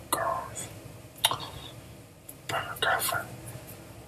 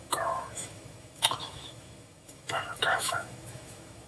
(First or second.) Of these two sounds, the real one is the first